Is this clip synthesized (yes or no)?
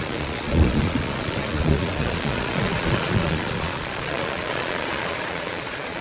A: yes